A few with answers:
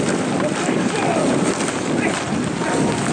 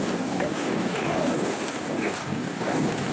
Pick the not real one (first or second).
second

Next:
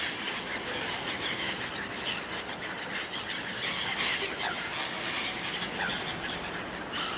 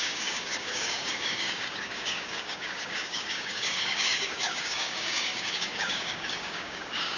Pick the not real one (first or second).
second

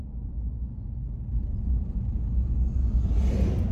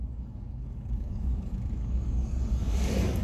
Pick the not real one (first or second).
second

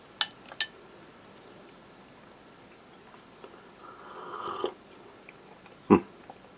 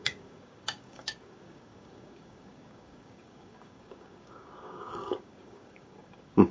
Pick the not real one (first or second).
second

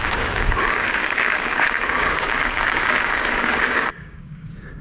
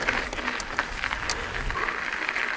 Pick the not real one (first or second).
first